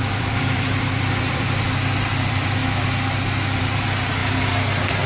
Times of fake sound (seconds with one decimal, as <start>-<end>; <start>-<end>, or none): 0.0-2.6; 3.6-4.2